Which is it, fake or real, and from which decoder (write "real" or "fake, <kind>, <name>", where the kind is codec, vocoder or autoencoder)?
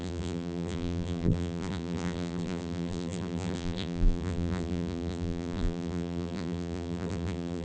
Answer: fake, vocoder, BigVGAN v2